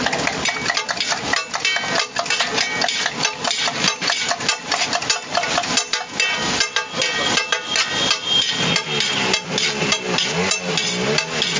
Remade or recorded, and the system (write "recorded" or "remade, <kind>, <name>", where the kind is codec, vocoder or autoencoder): recorded